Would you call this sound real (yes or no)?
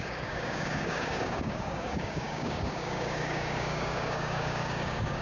no